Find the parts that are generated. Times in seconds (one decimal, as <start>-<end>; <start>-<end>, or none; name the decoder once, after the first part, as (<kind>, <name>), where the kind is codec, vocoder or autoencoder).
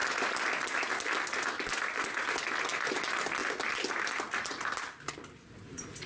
none